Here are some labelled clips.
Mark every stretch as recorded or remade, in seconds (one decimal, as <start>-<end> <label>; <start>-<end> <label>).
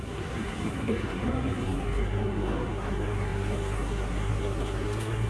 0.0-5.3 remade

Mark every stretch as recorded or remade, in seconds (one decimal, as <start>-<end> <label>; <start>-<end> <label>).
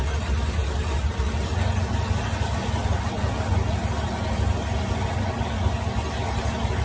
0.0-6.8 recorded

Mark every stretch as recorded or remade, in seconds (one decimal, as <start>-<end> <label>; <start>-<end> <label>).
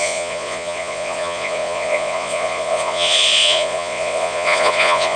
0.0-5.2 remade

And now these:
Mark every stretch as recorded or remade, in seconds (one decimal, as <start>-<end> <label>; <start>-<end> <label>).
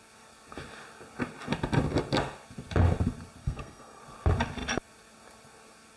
0.0-3.4 recorded; 3.4-4.0 remade; 4.0-6.0 recorded